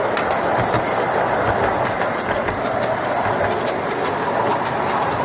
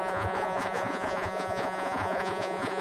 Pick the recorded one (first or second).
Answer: first